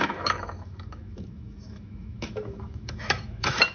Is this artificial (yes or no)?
yes